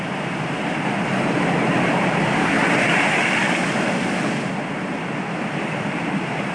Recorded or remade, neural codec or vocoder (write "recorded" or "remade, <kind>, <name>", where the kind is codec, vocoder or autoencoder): recorded